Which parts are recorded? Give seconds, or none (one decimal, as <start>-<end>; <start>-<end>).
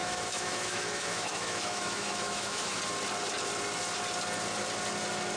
2.8-5.4